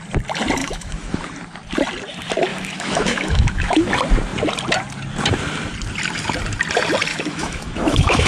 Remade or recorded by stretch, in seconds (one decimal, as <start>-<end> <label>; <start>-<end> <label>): 0.0-0.6 recorded; 0.6-1.2 remade; 1.2-2.5 recorded; 2.5-3.9 remade; 3.9-7.1 recorded; 7.1-8.3 remade